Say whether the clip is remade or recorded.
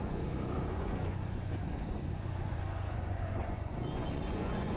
remade